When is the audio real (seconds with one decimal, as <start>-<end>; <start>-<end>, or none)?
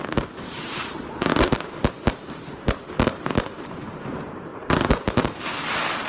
1.3-1.9